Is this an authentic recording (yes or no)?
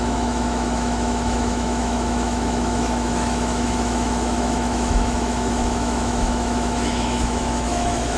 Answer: no